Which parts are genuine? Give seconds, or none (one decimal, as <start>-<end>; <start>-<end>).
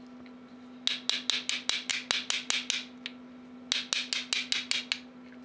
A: 0.0-5.4